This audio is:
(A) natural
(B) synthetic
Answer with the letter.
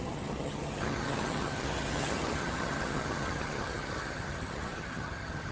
B